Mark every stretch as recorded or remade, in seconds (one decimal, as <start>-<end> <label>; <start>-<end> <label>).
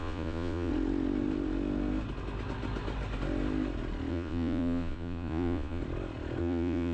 0.0-0.7 remade; 0.7-4.1 recorded; 4.1-5.8 remade; 5.8-6.4 recorded; 6.4-6.9 remade